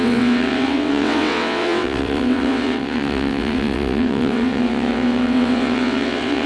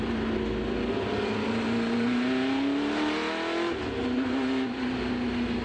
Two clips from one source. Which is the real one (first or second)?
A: second